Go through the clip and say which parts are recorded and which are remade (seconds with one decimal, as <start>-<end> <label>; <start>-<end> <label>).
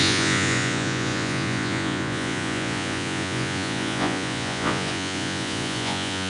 0.0-6.3 remade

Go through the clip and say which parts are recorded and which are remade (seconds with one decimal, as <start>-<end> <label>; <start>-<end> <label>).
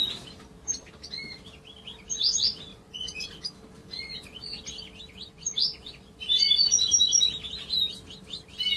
0.0-2.7 recorded; 2.7-3.4 remade; 3.4-3.8 recorded; 3.8-4.6 remade; 4.6-5.1 recorded; 5.1-6.2 remade; 6.2-8.8 recorded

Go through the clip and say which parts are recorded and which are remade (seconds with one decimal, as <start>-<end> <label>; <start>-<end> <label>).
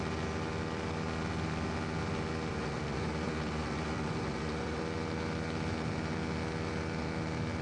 0.0-2.5 recorded; 2.5-4.8 remade; 4.8-7.6 recorded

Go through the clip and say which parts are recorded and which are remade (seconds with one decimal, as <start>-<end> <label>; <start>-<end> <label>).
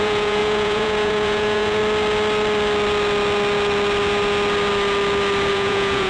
0.0-1.8 remade; 1.8-5.5 recorded; 5.5-6.1 remade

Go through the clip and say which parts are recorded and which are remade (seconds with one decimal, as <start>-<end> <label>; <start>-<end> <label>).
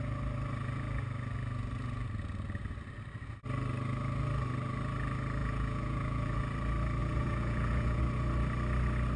0.0-5.4 recorded; 5.4-6.4 remade; 6.4-7.0 recorded; 7.0-8.0 remade; 8.0-9.2 recorded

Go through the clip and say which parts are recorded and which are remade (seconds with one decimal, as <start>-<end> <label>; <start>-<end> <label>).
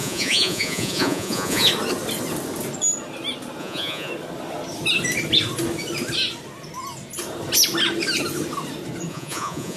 0.0-1.7 remade; 1.7-3.6 recorded; 3.6-4.1 remade; 4.1-9.1 recorded; 9.1-9.8 remade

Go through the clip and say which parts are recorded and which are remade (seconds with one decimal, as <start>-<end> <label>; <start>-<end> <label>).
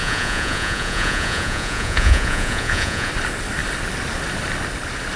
0.0-3.1 remade; 3.1-5.2 recorded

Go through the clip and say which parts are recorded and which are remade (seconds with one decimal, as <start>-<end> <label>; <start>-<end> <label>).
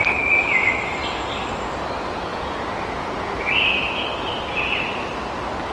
0.0-2.3 recorded; 2.3-3.5 remade; 3.5-5.7 recorded